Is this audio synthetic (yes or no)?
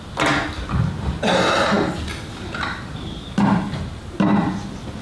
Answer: no